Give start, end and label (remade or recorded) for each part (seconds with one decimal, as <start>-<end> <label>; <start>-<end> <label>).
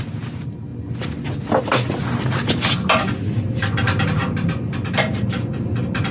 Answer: 0.0-6.1 recorded